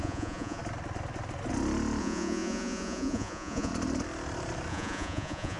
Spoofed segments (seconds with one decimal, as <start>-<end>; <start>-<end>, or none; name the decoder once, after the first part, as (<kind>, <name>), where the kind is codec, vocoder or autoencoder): 0.0-0.6 (vocoder, Vocos); 2.0-3.7; 4.7-5.6